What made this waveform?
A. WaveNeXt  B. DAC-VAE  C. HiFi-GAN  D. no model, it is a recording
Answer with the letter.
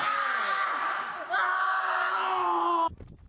D